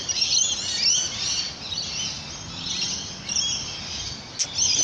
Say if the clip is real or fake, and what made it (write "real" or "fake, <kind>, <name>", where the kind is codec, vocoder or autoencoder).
real